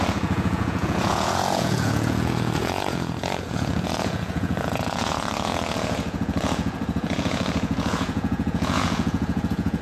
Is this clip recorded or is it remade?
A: remade